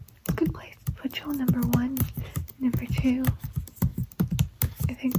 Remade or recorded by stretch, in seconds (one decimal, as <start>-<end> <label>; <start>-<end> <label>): 0.0-5.2 recorded